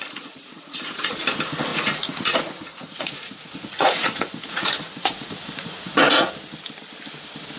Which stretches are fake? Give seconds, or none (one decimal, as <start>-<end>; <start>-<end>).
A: 0.0-1.2; 1.7-6.3